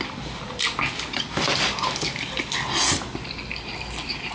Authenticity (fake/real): real